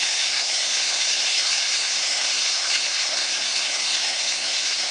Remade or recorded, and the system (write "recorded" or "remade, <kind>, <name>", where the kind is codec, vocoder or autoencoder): remade, codec, SNAC